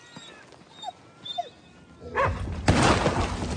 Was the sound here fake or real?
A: real